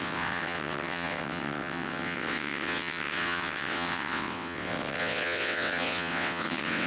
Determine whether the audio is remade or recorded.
remade